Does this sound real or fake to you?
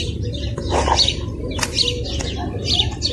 real